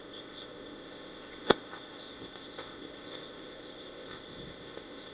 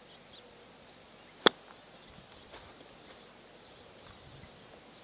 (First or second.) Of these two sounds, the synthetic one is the first